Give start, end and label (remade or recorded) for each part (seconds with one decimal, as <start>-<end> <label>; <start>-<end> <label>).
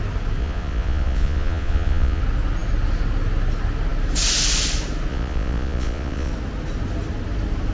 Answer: 0.0-0.4 recorded; 0.4-2.2 remade; 2.2-5.1 recorded; 5.1-6.3 remade; 6.3-7.7 recorded